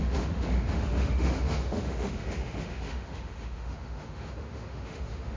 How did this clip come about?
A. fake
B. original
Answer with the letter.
A